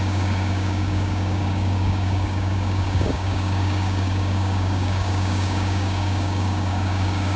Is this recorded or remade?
remade